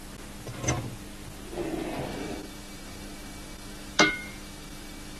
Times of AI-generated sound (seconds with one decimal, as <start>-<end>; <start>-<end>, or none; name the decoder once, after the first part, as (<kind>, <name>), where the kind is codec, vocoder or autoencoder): 2.1-5.2 (autoencoder, DAC-VAE)